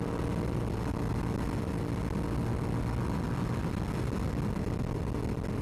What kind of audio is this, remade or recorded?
recorded